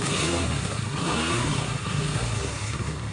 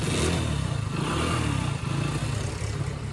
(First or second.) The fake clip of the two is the first